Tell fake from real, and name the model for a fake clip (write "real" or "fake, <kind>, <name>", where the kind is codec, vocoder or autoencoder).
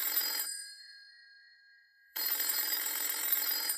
fake, autoencoder, DAC-VAE